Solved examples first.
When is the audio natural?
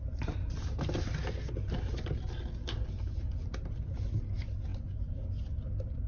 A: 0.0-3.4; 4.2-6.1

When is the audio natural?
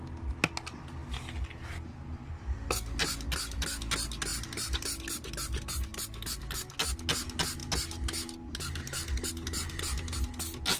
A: 0.0-10.8